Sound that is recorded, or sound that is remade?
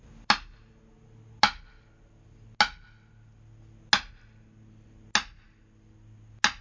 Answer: recorded